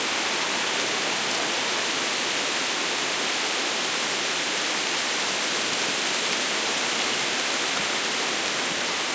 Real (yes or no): yes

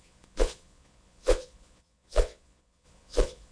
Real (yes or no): no